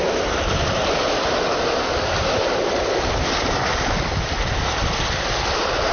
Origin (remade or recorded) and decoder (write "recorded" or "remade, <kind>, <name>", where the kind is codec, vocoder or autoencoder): recorded